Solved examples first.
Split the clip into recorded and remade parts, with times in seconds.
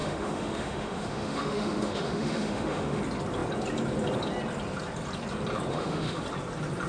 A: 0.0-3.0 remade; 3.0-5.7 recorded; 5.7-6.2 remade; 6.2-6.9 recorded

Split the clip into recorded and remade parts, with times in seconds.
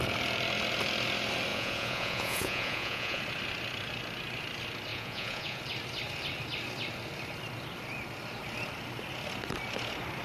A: 0.0-1.5 recorded; 1.5-3.2 remade; 3.2-4.9 recorded; 4.9-5.6 remade; 5.6-10.2 recorded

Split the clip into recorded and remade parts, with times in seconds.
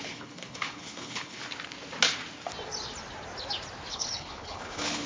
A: 0.0-1.4 remade; 1.4-3.9 recorded; 3.9-5.1 remade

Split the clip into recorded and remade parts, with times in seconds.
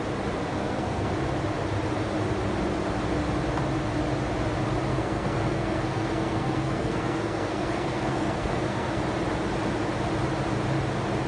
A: 0.0-0.5 recorded; 0.5-1.1 remade; 1.1-4.9 recorded; 4.9-9.0 remade; 9.0-11.3 recorded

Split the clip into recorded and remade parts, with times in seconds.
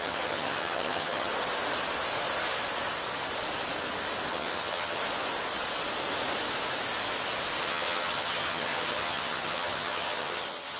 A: 0.0-1.3 remade; 1.3-4.3 recorded; 4.3-5.0 remade; 5.0-7.6 recorded; 7.6-10.8 remade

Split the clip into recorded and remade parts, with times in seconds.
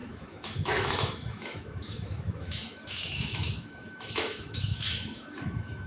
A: 0.0-5.9 remade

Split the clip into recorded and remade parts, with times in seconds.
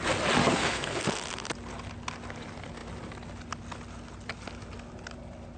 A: 0.0-0.4 recorded; 0.4-1.0 remade; 1.0-5.6 recorded